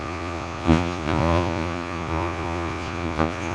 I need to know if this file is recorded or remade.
remade